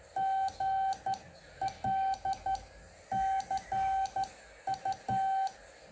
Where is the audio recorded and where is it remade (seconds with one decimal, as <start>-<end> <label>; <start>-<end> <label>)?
0.0-5.9 recorded